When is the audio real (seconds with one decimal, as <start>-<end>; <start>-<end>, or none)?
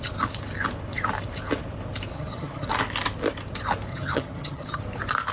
0.0-2.1; 2.7-3.9; 4.8-5.3